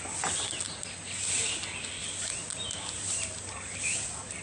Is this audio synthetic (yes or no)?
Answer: no